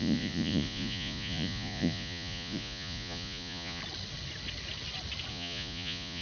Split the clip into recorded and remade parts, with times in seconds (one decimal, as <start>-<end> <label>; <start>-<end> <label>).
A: 0.0-3.8 remade; 3.8-5.3 recorded; 5.3-6.2 remade